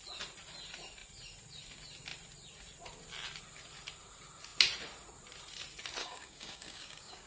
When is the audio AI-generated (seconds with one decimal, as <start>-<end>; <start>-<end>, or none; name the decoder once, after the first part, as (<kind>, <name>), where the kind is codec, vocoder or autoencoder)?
6.0-7.3 (codec, DAC)